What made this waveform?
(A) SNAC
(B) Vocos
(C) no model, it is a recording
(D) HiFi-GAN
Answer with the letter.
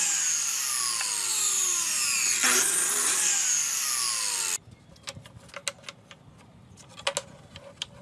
C